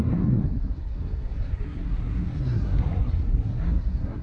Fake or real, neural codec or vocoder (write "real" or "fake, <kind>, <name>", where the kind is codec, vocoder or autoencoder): fake, codec, SNAC